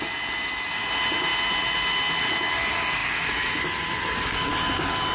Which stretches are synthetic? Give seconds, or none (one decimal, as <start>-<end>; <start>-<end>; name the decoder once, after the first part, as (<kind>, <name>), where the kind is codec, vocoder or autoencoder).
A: none

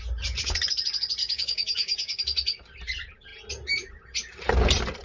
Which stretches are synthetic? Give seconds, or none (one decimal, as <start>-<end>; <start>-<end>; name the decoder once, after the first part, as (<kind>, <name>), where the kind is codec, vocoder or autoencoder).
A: 1.2-2.2 (codec, DAC)

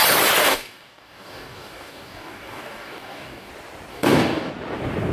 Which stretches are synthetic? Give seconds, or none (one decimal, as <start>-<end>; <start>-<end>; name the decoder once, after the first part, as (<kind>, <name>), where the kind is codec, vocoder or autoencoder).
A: 0.4-3.5 (codec, DAC); 3.9-4.5

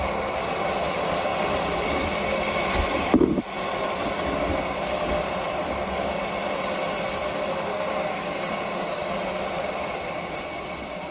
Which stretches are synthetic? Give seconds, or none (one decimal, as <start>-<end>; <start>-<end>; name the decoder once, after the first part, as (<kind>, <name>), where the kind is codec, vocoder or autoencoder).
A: 7.7-9.1 (codec, DAC)

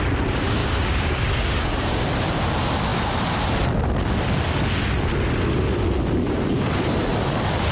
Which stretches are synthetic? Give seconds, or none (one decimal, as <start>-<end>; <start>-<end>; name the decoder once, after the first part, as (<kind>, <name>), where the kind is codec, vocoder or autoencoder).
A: 0.6-1.9 (codec, DAC)

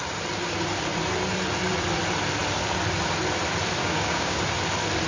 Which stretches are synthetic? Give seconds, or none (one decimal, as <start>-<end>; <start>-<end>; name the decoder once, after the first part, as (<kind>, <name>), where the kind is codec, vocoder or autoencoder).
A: 3.8-4.4 (codec, DAC)

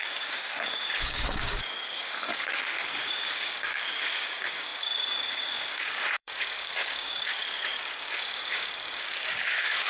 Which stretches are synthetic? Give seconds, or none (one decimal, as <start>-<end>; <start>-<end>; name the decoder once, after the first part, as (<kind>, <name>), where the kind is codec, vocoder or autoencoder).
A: 0.0-9.9 (codec, DAC)

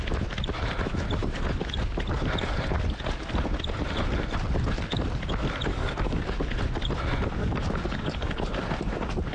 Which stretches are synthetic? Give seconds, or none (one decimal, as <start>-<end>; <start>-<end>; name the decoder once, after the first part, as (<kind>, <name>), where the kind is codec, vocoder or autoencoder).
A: 5.7-6.2 (codec, DAC); 7.4-8.4